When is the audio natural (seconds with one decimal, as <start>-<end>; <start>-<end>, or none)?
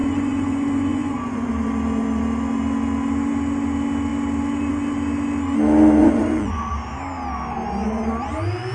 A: 1.5-6.0; 6.7-8.7